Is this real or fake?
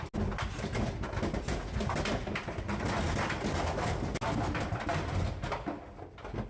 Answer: real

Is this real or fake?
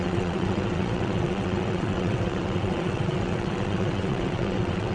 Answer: fake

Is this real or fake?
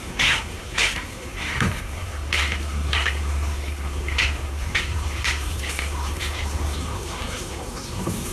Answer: fake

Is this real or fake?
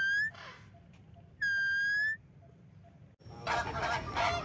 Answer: real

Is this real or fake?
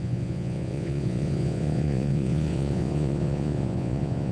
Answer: fake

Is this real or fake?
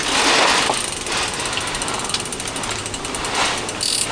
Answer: real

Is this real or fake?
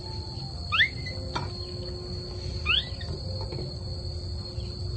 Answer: real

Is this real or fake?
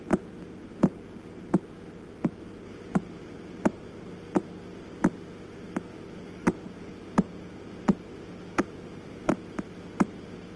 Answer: real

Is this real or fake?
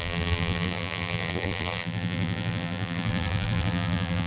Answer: fake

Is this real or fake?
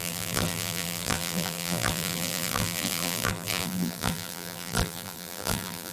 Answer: fake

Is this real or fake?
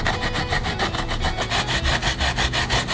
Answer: real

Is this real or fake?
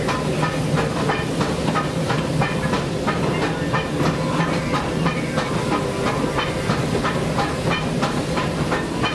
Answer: real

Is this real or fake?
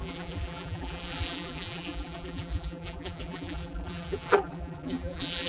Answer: fake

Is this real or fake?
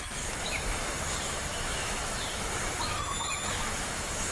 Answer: fake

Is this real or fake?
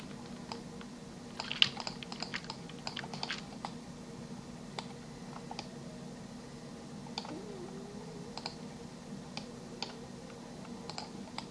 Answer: real